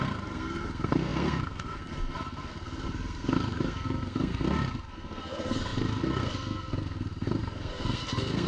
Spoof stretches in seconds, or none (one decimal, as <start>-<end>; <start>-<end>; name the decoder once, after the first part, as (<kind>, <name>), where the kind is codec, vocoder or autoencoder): 0.0-8.5 (codec, SNAC)